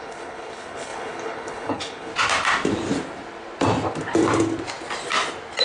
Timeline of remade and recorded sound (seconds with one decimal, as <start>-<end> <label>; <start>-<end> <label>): 0.0-2.1 remade; 2.1-5.6 recorded